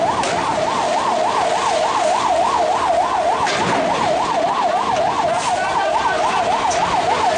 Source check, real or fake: real